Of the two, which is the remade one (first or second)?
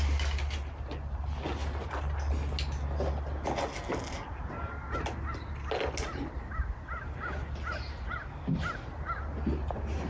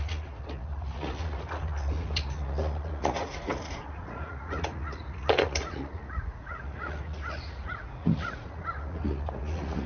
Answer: second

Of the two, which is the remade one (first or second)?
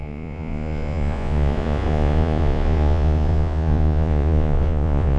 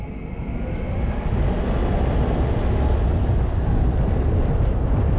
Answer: first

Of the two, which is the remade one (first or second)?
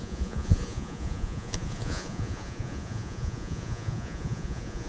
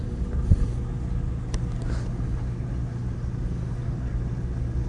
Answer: first